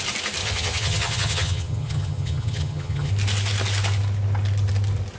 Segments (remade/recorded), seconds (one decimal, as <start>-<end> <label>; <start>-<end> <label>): 0.0-0.4 recorded; 0.4-3.1 remade; 3.1-5.2 recorded